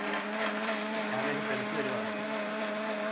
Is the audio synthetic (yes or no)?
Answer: no